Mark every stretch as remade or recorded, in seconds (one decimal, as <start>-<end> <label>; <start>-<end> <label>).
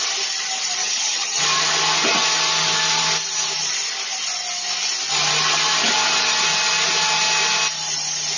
0.0-0.8 recorded; 0.8-1.4 remade; 1.4-8.4 recorded